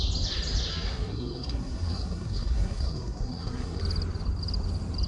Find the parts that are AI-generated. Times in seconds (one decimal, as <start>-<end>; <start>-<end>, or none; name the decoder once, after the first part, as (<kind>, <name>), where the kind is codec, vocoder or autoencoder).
0.7-3.8 (codec, SNAC)

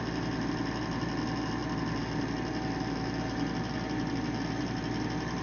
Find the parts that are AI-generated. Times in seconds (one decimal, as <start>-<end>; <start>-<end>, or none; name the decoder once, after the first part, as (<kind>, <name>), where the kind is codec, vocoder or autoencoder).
none

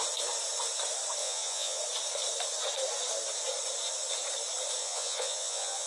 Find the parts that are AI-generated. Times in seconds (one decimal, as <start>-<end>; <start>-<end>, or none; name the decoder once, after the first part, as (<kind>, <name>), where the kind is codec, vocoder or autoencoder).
1.2-1.8 (vocoder, Vocos); 4.8-5.9

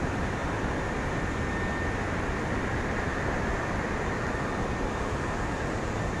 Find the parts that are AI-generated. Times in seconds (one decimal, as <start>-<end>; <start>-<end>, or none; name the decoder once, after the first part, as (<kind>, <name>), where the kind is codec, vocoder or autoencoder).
0.0-0.4 (vocoder, BigVGAN v2); 2.6-6.2

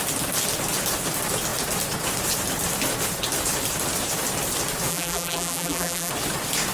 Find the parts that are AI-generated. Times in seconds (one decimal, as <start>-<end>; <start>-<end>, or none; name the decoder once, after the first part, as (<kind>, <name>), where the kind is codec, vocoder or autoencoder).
4.9-6.1 (vocoder, BigVGAN v2)

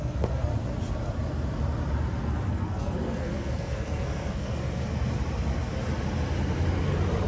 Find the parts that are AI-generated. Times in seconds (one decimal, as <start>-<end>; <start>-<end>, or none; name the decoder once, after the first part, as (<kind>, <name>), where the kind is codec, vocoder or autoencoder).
0.0-0.5 (codec, SNAC); 2.5-4.8